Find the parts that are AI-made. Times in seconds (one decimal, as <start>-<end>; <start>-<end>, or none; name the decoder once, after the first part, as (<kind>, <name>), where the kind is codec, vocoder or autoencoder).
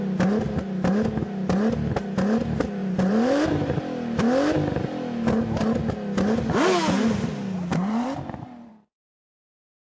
2.8-3.8 (vocoder, BigVGAN v2); 7.7-8.7